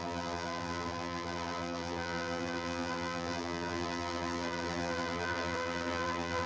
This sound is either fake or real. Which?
fake